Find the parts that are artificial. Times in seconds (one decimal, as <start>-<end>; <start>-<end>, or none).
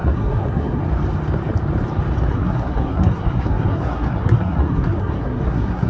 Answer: 0.0-0.8; 2.3-5.9